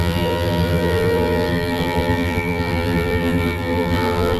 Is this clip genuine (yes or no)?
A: no